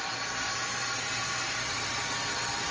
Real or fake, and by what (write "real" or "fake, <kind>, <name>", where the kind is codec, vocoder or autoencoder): real